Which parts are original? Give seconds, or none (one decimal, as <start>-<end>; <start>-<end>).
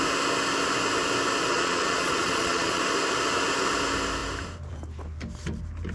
0.0-1.5; 2.8-5.9